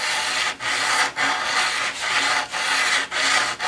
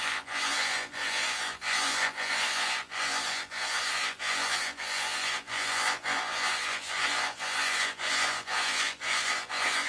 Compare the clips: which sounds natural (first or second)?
first